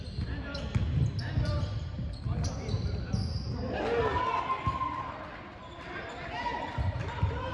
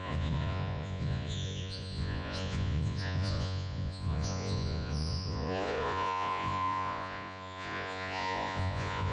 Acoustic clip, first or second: first